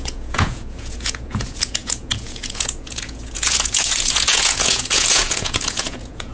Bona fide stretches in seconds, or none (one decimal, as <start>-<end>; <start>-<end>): none